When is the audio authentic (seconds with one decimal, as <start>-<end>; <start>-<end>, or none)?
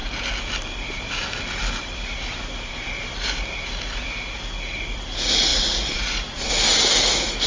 0.0-5.5; 6.5-7.5